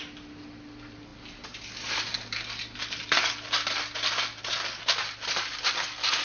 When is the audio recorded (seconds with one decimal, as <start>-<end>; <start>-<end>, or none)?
0.0-6.2